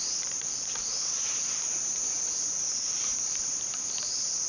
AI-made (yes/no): yes